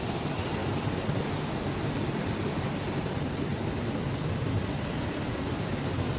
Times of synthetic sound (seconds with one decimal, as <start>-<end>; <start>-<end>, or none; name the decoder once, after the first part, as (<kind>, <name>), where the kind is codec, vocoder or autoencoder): 0.0-0.6 (vocoder, BigVGAN v2); 1.2-3.5; 5.1-6.2